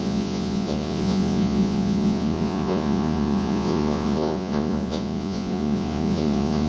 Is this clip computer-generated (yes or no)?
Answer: yes